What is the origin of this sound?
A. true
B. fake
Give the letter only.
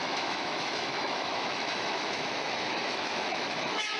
B